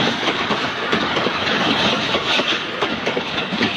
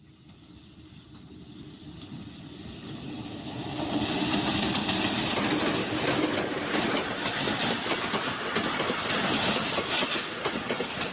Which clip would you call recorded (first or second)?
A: second